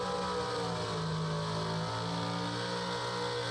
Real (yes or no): yes